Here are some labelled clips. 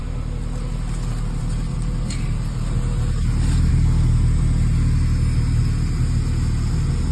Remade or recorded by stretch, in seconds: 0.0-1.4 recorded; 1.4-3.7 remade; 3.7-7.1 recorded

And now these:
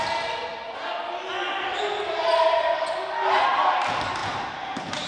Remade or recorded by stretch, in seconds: 0.0-4.2 recorded; 4.2-5.1 remade

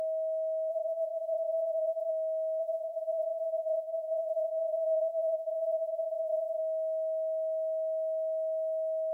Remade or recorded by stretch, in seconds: 0.0-0.7 recorded; 0.7-2.1 remade; 2.1-2.6 recorded; 2.6-6.6 remade; 6.6-9.1 recorded

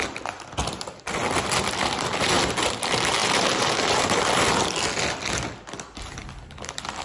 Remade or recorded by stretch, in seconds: 0.0-3.2 recorded; 3.2-4.2 remade; 4.2-7.0 recorded

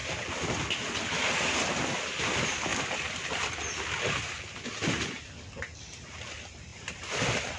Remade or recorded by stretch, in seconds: 0.0-2.2 recorded; 2.2-2.7 remade; 2.7-5.8 recorded; 5.8-7.6 remade

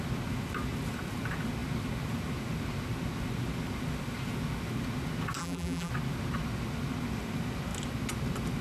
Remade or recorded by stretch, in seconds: 0.0-5.4 recorded; 5.4-5.9 remade; 5.9-8.6 recorded

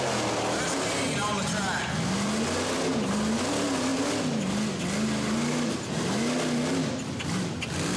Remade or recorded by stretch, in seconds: 0.0-8.0 recorded